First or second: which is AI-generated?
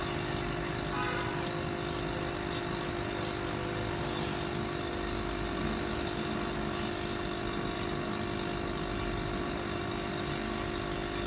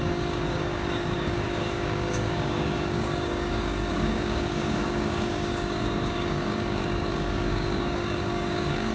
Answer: second